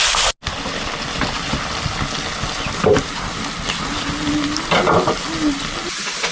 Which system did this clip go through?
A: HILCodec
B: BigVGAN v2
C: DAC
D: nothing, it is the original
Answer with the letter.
D